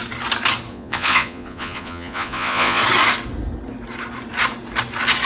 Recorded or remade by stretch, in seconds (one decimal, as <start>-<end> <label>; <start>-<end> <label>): 0.0-0.7 recorded; 0.7-2.8 remade; 2.8-5.3 recorded